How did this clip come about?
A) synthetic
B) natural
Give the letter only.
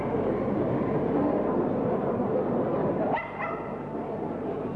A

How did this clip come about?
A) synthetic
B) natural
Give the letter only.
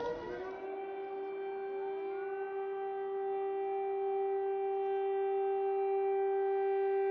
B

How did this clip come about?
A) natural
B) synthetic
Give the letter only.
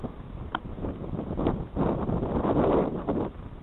A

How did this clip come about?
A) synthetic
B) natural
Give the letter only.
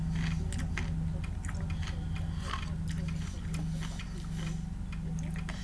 B